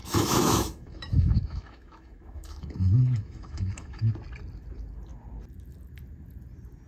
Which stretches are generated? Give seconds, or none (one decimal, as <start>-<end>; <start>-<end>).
0.0-4.1